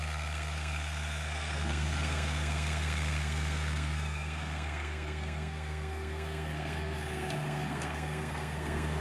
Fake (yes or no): yes